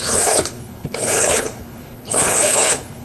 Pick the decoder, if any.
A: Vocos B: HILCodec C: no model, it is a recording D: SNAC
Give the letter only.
B